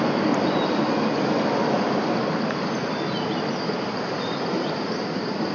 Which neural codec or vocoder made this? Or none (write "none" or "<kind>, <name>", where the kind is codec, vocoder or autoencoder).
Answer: none